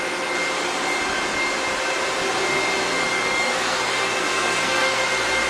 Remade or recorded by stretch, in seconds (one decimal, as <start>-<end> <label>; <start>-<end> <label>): 0.0-3.1 recorded; 3.1-5.1 remade; 5.1-5.5 recorded